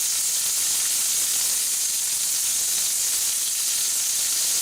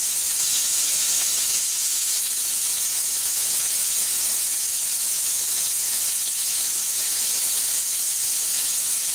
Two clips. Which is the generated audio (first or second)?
second